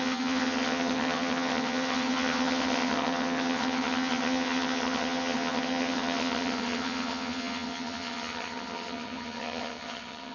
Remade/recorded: remade